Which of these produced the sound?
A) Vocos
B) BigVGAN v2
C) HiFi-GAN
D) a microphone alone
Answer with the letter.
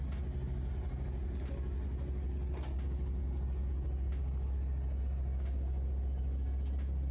D